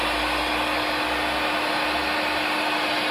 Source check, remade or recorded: recorded